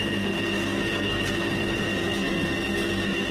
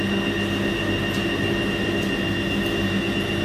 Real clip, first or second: second